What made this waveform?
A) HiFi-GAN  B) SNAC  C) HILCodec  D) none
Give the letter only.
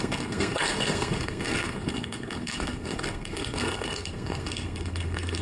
B